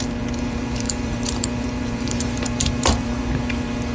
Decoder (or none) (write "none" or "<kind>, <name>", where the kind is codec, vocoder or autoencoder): vocoder, BigVGAN v2